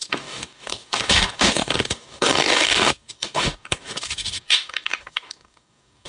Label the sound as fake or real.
fake